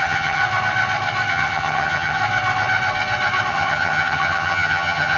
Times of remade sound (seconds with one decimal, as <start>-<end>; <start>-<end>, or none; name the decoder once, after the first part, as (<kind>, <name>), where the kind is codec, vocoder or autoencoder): 0.0-0.4 (vocoder, HiFi-GAN); 1.3-2.2; 3.5-5.2